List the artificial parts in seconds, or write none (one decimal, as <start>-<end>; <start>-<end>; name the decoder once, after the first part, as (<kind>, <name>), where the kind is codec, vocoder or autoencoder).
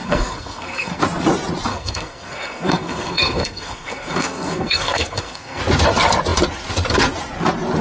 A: 0.0-1.0 (codec, SNAC); 1.7-5.6